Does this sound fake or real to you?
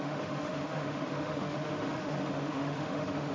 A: fake